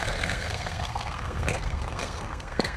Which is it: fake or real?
fake